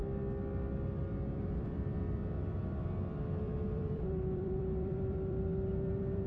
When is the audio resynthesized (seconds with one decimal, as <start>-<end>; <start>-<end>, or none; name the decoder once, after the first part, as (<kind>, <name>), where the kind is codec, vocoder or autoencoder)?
1.3-2.2 (vocoder, BigVGAN v2); 2.8-6.3